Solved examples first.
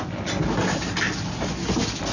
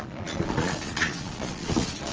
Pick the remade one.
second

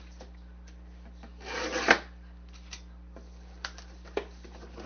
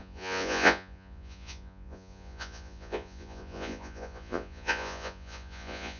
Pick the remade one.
second